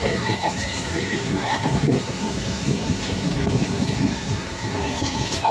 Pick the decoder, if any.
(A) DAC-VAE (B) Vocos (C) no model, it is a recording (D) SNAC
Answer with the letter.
D